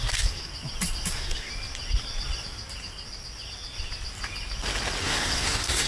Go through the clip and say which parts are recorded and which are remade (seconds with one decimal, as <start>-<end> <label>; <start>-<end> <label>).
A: 0.0-0.5 remade; 0.5-1.1 recorded; 1.1-1.5 remade; 1.5-5.0 recorded; 5.0-5.9 remade